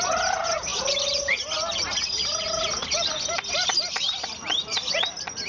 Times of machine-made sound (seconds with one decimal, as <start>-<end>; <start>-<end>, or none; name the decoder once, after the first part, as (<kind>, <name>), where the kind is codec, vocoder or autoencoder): none